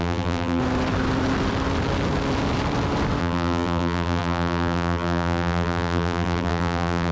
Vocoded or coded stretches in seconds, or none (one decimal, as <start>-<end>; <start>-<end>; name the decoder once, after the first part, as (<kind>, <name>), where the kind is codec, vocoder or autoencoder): 0.0-0.6 (vocoder, BigVGAN v2); 3.2-7.1